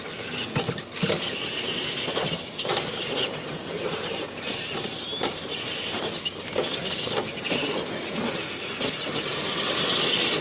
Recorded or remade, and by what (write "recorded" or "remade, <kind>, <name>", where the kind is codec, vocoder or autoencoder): recorded